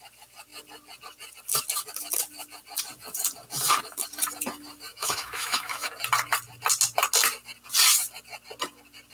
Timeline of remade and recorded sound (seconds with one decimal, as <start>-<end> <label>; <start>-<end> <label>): 0.0-4.9 recorded; 4.9-5.9 remade; 5.9-9.1 recorded